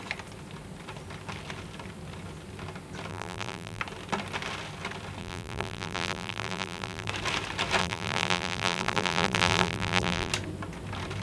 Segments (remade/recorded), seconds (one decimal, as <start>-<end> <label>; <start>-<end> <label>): 0.0-3.1 recorded; 3.1-3.8 remade; 3.8-5.2 recorded; 5.2-7.1 remade; 7.1-7.8 recorded; 7.8-10.3 remade; 10.3-11.2 recorded